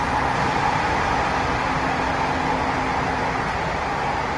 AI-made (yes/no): no